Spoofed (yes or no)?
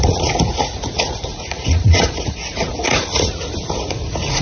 yes